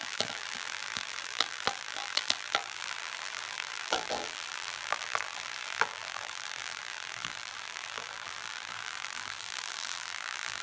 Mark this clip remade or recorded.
remade